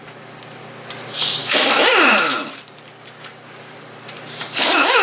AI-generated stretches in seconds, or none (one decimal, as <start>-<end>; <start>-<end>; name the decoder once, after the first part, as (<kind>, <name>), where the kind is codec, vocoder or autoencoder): 1.4-4.4 (vocoder, BigVGAN v2)